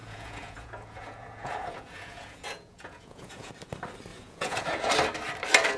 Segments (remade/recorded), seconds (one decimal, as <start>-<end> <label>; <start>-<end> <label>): 0.0-3.5 remade; 3.5-4.1 recorded; 4.1-4.9 remade; 4.9-5.8 recorded